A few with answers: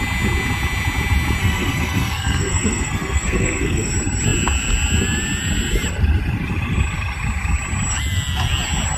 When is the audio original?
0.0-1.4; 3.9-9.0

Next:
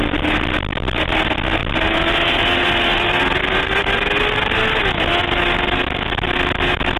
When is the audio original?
0.0-7.0

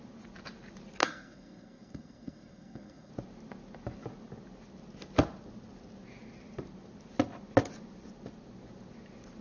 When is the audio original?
0.0-1.0; 3.1-9.4

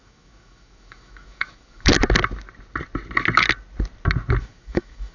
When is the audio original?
1.9-4.4

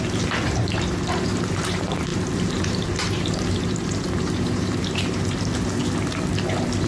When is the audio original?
5.8-6.9

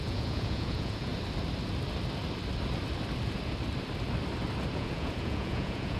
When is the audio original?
1.1-4.7